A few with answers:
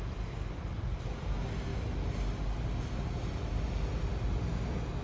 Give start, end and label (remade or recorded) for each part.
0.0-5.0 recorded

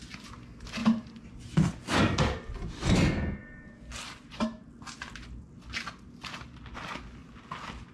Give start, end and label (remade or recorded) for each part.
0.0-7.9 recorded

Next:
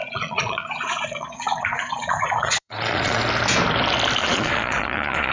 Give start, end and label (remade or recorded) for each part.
0.0-3.2 remade; 3.2-4.2 recorded; 4.2-5.3 remade